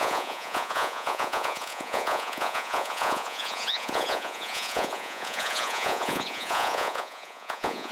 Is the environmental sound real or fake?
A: fake